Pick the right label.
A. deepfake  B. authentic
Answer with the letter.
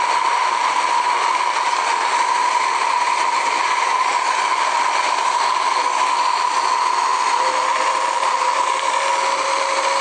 B